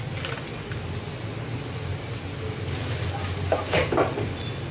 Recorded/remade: recorded